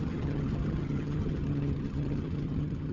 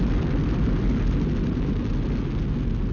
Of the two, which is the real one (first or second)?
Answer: second